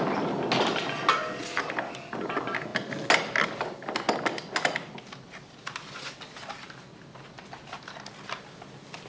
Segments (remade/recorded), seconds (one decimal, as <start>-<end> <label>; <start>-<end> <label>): 0.0-9.1 recorded